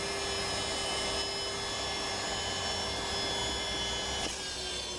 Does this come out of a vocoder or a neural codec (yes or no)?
no